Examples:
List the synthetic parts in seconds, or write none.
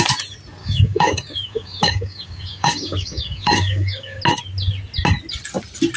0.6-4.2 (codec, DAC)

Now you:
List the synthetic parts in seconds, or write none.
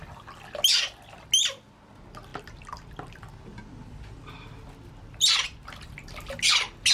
none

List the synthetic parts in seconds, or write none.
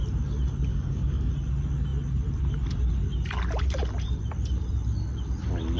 0.7-1.3 (codec, DAC)